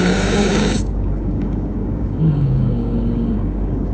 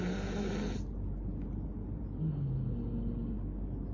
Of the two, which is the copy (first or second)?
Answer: first